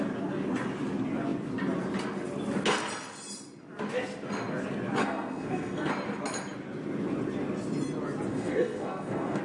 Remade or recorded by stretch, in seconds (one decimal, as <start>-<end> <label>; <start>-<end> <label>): 0.0-5.0 recorded; 5.0-5.9 remade; 5.9-8.3 recorded; 8.3-9.4 remade